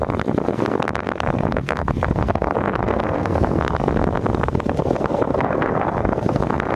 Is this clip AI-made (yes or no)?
yes